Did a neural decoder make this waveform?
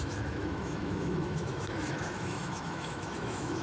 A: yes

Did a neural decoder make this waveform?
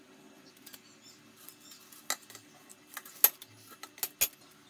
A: no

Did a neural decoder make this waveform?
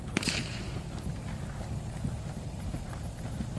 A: no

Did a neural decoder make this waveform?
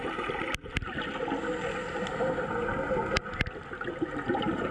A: no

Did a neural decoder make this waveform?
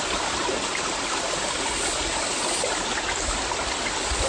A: no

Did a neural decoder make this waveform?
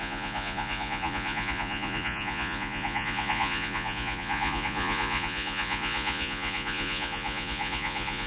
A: yes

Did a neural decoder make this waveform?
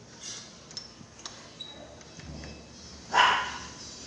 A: no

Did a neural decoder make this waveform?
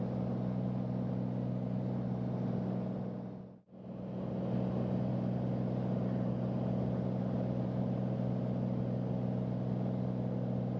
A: no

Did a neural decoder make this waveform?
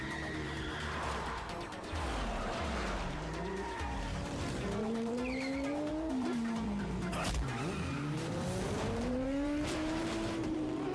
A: yes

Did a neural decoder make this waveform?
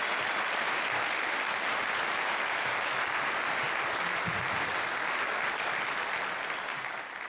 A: no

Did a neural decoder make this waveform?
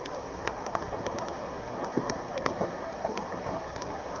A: yes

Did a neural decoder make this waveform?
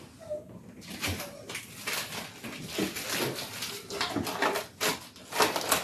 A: no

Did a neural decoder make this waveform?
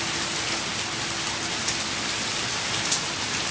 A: no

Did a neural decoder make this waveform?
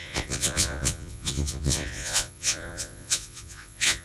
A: yes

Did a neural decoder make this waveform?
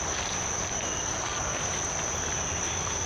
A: no